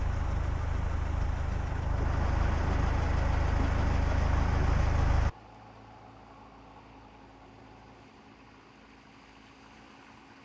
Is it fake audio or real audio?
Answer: real